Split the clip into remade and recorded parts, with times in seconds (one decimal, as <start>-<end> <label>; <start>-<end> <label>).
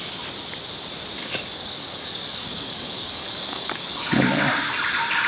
0.0-1.2 recorded; 1.2-4.4 remade; 4.4-5.3 recorded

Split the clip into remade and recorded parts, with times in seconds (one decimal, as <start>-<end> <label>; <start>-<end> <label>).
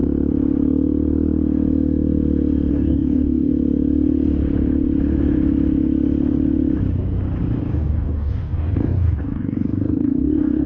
0.0-2.7 recorded; 2.7-3.5 remade; 3.5-7.6 recorded; 7.6-10.7 remade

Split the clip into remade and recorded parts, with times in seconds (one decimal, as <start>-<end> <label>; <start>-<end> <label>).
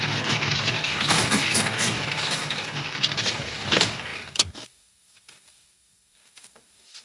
0.0-7.0 remade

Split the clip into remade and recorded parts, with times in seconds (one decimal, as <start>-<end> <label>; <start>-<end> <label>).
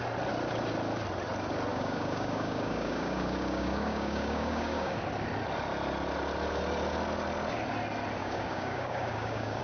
0.0-1.7 recorded; 1.7-5.0 remade; 5.0-8.2 recorded; 8.2-9.6 remade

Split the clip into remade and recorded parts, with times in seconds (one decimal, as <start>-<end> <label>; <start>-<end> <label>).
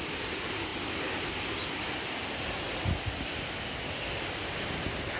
0.0-5.2 recorded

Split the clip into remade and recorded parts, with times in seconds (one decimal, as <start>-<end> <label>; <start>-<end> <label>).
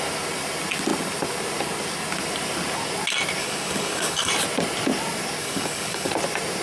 0.0-3.4 recorded; 3.4-4.3 remade; 4.3-5.4 recorded; 5.4-6.1 remade; 6.1-6.6 recorded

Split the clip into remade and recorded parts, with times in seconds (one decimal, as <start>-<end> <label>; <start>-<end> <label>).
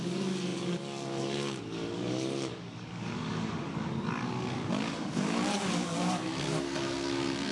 0.0-7.5 remade